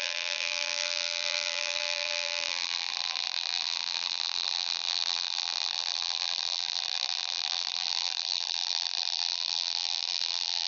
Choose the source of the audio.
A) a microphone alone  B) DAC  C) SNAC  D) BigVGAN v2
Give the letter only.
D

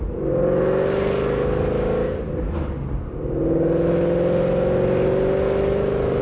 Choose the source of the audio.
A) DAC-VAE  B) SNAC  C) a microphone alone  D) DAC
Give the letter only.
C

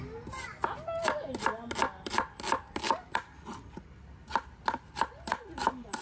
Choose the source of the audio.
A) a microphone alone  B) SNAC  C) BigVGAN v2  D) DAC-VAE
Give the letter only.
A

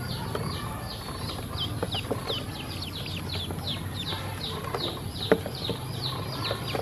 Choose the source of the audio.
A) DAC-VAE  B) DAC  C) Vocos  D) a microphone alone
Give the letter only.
D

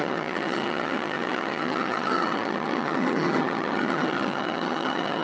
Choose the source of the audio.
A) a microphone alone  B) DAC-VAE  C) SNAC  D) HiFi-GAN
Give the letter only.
D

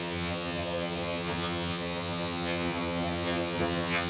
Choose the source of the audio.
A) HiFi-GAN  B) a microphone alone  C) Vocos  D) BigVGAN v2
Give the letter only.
A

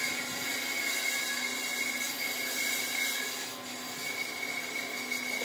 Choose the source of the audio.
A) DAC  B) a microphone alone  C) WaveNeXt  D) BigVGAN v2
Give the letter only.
B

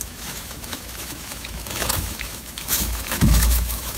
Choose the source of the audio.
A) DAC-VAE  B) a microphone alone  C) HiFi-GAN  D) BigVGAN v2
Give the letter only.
A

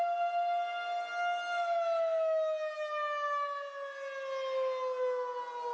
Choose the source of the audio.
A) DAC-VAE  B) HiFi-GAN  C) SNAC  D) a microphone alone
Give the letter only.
D